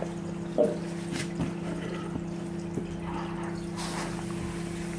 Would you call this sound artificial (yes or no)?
no